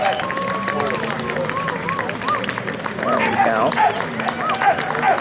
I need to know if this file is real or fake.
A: real